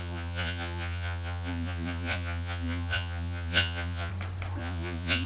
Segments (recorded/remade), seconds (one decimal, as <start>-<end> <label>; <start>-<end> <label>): 0.0-4.1 remade; 4.1-4.6 recorded; 4.6-5.3 remade